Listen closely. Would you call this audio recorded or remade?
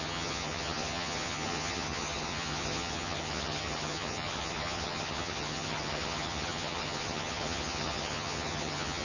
remade